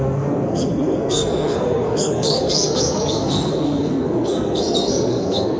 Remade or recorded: remade